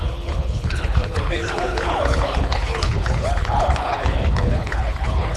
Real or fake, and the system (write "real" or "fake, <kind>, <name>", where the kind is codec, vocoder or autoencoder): fake, codec, HILCodec